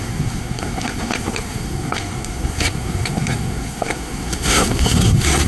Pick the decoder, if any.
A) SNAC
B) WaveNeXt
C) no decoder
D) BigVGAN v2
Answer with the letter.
A